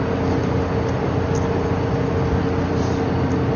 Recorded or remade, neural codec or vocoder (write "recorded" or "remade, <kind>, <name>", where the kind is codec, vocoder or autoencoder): recorded